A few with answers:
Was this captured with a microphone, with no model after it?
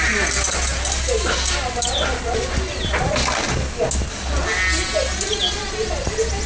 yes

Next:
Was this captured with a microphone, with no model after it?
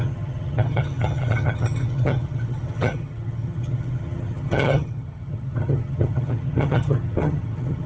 no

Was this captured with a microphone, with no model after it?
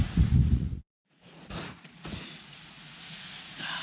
no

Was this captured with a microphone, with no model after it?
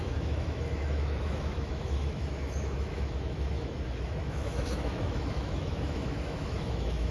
no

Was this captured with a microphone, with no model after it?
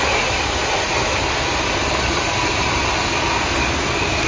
yes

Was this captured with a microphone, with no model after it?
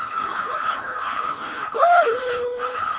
no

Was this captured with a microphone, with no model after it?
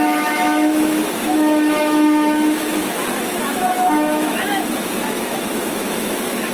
no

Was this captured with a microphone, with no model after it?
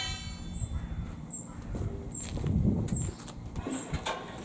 yes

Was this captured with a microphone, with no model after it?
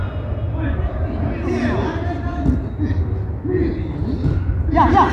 yes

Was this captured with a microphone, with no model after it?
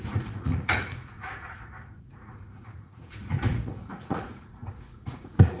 no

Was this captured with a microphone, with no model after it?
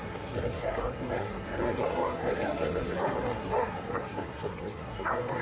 no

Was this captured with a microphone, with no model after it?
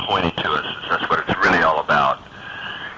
yes